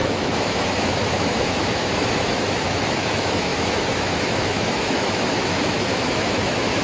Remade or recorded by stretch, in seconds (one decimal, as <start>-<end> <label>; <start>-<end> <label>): 0.0-6.8 remade